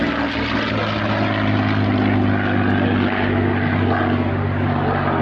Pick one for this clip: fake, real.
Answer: real